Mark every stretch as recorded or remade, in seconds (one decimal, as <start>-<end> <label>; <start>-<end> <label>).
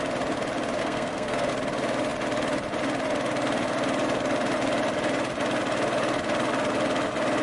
0.0-0.8 recorded; 0.8-1.5 remade; 1.5-7.4 recorded